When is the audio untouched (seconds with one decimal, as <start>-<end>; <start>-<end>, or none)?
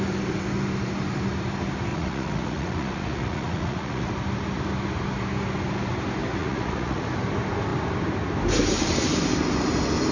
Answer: 0.0-1.9; 4.1-6.4; 7.0-10.1